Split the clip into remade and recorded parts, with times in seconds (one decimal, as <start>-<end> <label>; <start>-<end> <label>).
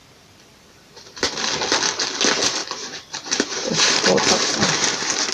0.0-1.5 remade; 1.5-2.6 recorded; 2.6-4.6 remade; 4.6-5.3 recorded